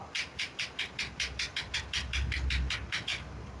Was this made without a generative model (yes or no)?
yes